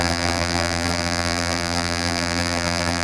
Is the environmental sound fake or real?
fake